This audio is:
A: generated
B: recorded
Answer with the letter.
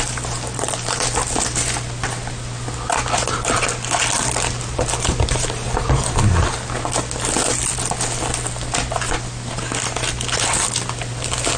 B